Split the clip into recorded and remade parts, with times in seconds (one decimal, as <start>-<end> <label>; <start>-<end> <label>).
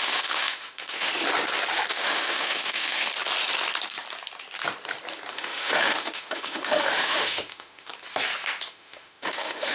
0.0-1.1 remade; 1.1-1.9 recorded; 1.9-3.1 remade; 3.1-5.3 recorded; 5.3-7.9 remade; 7.9-8.7 recorded; 8.7-9.7 remade